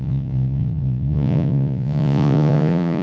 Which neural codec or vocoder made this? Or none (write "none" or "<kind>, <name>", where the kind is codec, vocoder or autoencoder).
vocoder, Vocos